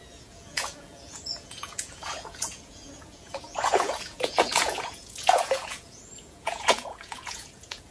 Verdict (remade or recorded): remade